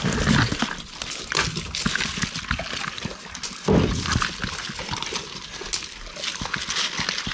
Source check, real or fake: real